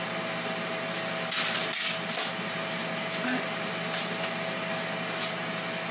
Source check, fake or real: real